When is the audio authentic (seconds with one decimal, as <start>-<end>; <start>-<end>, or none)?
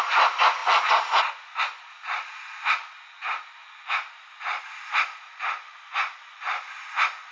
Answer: 0.0-7.3